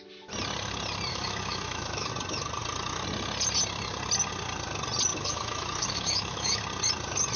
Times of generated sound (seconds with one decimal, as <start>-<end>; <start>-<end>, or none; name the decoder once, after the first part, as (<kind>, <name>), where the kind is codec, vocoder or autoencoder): 1.1-2.1 (autoencoder, DAC-VAE); 5.1-6.6